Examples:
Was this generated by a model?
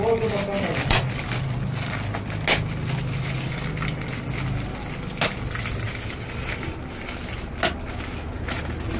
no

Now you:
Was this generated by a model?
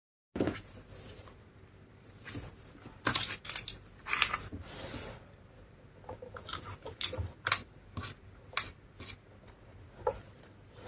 no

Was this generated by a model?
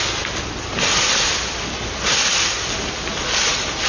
no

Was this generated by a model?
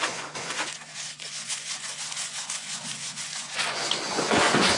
yes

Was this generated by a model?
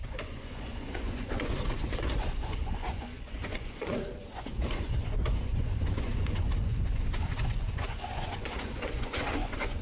yes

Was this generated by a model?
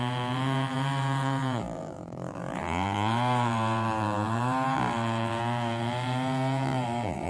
yes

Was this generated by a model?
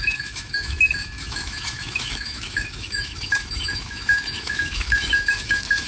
yes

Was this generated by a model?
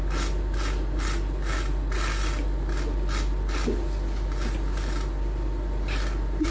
no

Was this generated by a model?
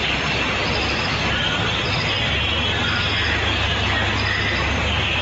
no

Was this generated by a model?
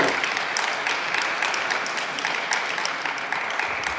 no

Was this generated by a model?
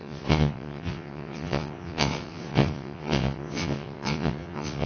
yes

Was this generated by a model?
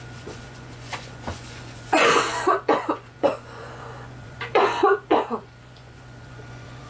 yes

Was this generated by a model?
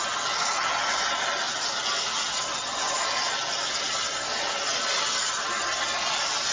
no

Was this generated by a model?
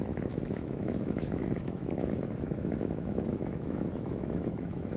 yes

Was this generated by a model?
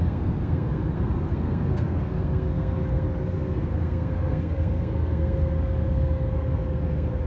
yes